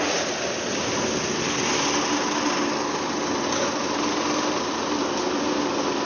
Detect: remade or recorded recorded